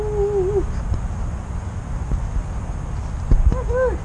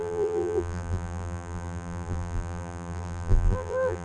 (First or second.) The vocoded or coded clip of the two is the second